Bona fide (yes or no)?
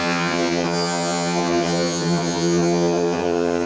no